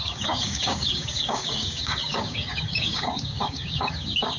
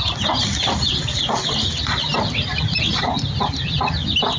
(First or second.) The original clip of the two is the second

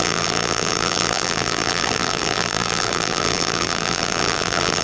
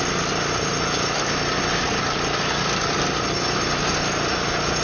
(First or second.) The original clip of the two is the second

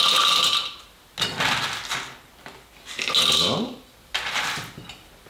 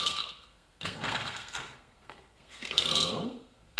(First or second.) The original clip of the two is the first